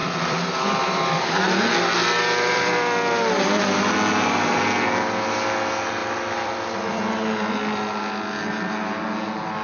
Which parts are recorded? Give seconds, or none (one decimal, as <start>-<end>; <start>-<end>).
1.2-2.0; 3.6-6.0; 6.5-9.6